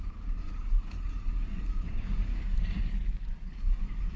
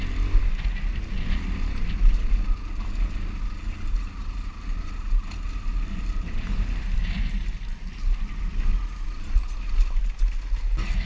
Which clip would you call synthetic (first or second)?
first